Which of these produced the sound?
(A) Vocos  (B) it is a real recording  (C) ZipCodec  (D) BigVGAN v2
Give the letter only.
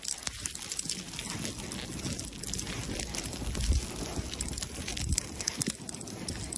B